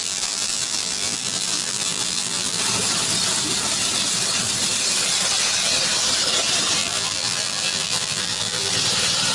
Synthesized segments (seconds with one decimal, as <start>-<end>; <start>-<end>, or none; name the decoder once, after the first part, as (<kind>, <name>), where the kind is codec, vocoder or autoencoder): 0.0-2.6 (vocoder, BigVGAN v2); 6.8-8.7